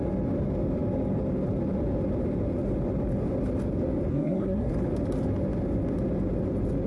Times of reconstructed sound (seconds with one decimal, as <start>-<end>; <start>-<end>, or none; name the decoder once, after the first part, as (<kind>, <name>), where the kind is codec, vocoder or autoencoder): 4.1-4.7 (codec, SNAC)